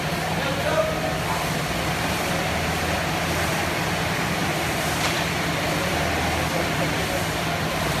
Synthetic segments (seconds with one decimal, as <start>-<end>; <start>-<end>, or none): none